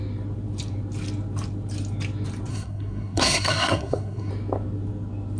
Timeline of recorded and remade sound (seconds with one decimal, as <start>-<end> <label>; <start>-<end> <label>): 0.0-2.5 recorded; 2.5-4.3 remade; 4.3-5.4 recorded